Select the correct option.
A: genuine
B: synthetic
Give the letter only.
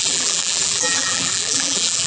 B